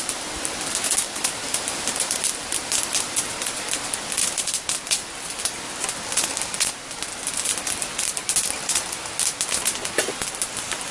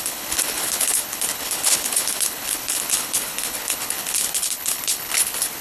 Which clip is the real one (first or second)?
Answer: first